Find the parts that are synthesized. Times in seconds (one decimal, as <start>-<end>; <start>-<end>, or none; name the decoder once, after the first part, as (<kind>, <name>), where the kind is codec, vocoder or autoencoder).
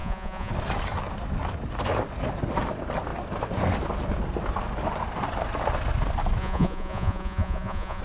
0.0-0.5 (vocoder, Vocos); 6.4-8.0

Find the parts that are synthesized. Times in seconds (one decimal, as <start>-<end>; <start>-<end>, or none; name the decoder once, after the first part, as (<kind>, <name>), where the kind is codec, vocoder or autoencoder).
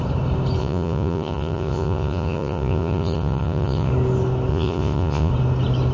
0.6-3.9 (vocoder, Vocos); 4.5-5.3